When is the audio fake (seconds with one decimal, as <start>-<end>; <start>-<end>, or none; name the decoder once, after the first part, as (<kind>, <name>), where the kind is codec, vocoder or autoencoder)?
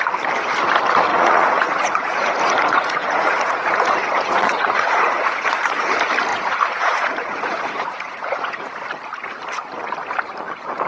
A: 1.1-5.8 (vocoder, Vocos); 6.3-8.7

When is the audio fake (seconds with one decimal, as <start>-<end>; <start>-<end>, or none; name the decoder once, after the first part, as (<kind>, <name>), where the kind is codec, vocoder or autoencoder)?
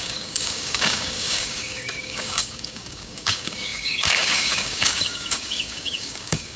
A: 0.0-6.6 (codec, DAC)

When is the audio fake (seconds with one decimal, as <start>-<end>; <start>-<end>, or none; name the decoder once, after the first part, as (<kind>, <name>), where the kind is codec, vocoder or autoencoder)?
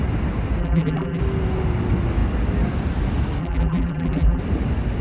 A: 0.6-1.2 (vocoder, BigVGAN v2); 3.4-4.4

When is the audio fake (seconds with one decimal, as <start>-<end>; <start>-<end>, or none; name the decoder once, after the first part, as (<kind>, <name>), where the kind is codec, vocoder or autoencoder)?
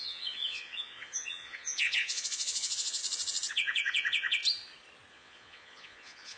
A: 0.0-3.0 (vocoder, Vocos); 3.5-4.4; 5.1-6.4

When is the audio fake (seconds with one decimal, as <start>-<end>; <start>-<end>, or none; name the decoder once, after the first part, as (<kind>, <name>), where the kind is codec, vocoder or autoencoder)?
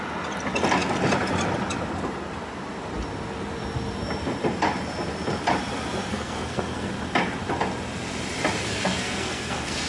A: 6.1-6.9 (codec, SNAC); 8.6-9.9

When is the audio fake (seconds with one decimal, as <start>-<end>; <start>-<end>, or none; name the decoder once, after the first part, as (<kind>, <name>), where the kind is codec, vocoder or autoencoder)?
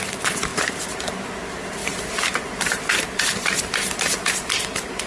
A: 0.5-1.1 (vocoder, BigVGAN v2); 1.8-5.1